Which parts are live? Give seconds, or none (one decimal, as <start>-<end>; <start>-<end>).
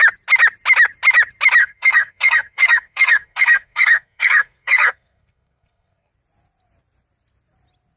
0.0-1.6; 6.1-8.0